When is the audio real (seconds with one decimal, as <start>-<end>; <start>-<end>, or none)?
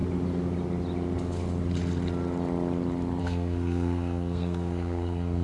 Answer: 0.0-3.2